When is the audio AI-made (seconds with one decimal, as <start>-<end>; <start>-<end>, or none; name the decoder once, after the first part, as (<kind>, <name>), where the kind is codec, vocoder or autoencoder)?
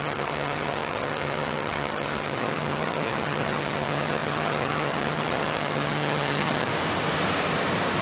0.0-6.7 (vocoder, HiFi-GAN)